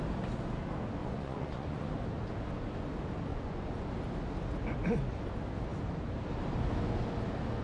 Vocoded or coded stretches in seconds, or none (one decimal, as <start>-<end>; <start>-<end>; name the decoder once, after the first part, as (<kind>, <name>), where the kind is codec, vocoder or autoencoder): 1.0-1.9 (vocoder, Vocos); 3.3-3.9